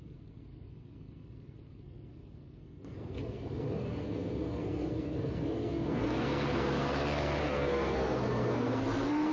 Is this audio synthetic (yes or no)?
yes